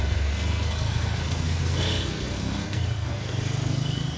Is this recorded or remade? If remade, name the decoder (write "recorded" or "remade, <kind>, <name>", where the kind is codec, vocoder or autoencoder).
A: remade, codec, SNAC